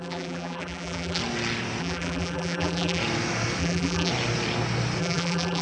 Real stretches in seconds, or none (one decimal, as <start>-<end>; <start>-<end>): 1.2-1.8; 3.0-3.6; 4.1-5.0